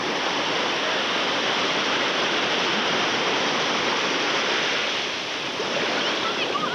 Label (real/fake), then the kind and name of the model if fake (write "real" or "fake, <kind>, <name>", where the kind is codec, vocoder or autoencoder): fake, vocoder, BigVGAN v2